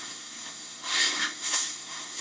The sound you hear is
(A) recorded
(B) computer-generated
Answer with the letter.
B